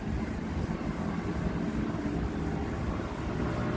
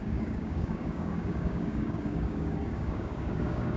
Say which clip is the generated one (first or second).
second